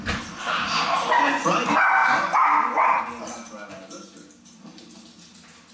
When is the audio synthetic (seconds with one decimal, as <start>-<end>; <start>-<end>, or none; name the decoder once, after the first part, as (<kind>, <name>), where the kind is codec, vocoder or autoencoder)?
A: 2.0-3.0 (vocoder, BigVGAN v2)